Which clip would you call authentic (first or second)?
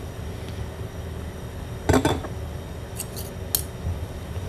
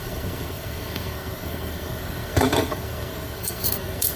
first